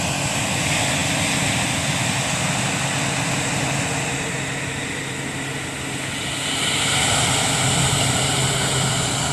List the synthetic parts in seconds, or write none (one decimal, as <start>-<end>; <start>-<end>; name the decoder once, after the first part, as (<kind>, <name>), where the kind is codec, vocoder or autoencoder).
none